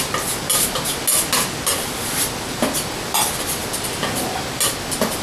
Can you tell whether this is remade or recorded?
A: recorded